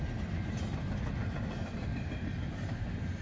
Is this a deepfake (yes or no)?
no